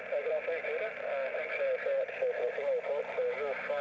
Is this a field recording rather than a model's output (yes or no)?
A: yes